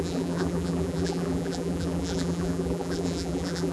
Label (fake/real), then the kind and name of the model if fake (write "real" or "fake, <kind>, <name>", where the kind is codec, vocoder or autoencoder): fake, vocoder, BigVGAN v2